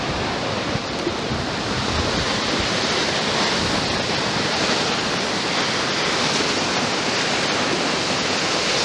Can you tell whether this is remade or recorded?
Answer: recorded